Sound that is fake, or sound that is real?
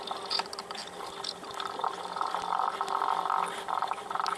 real